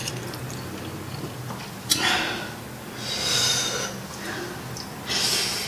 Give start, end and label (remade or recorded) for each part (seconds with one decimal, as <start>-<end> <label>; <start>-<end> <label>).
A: 0.0-5.7 recorded